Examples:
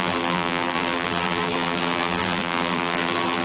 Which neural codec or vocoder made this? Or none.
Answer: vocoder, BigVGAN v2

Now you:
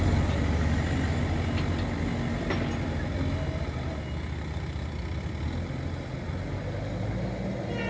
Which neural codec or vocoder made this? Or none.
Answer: none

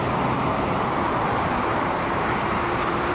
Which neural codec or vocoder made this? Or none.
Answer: vocoder, BigVGAN v2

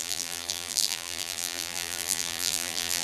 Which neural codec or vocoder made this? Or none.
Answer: vocoder, BigVGAN v2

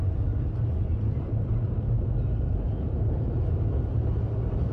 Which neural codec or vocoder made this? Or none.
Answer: none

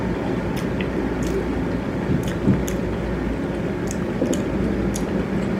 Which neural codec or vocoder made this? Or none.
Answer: none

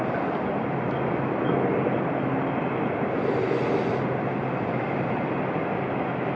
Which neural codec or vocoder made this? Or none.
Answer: vocoder, BigVGAN v2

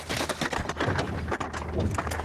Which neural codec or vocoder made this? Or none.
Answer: none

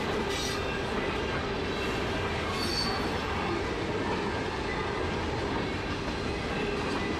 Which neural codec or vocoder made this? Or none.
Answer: none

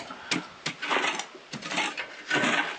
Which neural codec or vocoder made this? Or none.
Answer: none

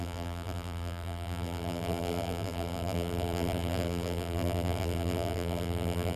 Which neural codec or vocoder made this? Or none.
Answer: vocoder, BigVGAN v2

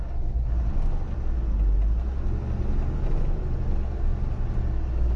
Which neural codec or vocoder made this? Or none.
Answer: none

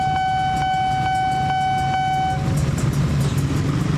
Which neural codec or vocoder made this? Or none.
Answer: none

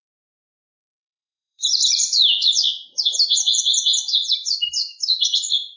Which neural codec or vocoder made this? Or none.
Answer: vocoder, BigVGAN v2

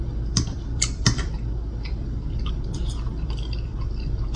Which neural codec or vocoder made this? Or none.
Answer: vocoder, BigVGAN v2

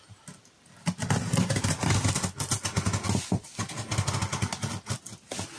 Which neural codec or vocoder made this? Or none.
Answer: none